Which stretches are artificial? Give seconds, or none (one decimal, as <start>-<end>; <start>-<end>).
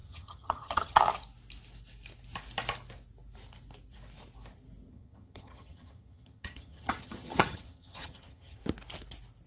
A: 0.0-1.0; 4.9-8.6